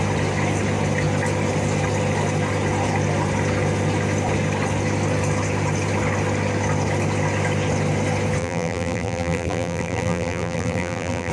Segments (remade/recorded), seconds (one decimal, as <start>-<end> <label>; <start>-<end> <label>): 0.0-8.4 recorded; 8.4-11.3 remade